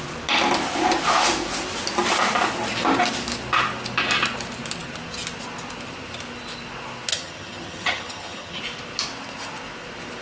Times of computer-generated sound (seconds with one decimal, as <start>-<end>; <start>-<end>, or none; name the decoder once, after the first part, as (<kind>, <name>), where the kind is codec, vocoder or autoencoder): 7.1-8.6 (vocoder, HiFi-GAN)